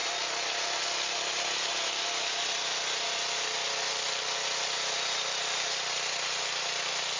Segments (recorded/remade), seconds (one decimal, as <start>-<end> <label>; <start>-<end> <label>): 0.0-7.2 recorded